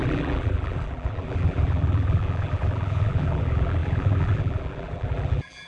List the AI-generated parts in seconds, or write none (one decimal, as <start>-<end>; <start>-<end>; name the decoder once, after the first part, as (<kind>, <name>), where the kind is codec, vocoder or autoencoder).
0.0-5.7 (vocoder, BigVGAN v2)